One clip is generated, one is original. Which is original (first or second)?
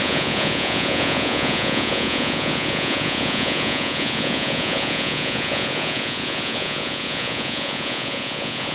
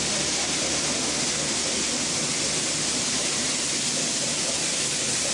second